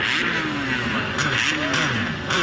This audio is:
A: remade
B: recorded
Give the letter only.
B